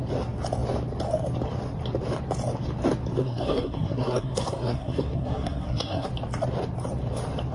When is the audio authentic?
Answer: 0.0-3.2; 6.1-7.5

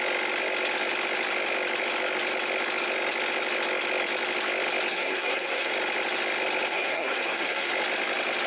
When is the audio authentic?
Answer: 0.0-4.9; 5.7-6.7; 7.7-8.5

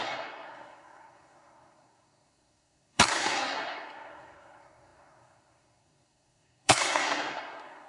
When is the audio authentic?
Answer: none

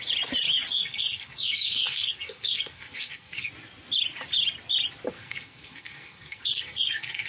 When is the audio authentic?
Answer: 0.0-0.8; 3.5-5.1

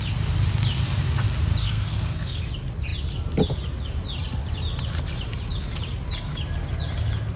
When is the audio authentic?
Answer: 0.0-1.6; 2.4-7.4

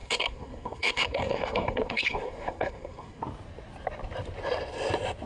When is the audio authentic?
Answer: 3.2-5.3

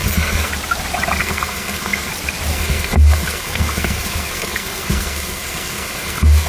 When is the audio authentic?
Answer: 0.5-1.2; 2.1-2.5

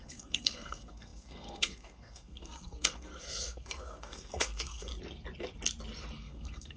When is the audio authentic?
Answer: 4.9-6.2